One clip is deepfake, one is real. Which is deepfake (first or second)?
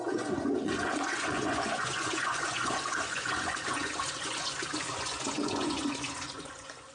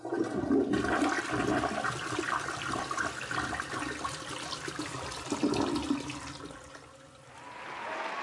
first